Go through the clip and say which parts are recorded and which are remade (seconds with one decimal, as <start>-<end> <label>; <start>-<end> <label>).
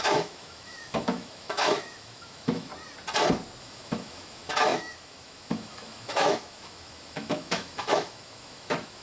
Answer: 0.0-2.7 remade; 2.7-3.6 recorded; 3.6-9.0 remade